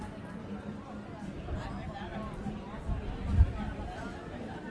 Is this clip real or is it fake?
fake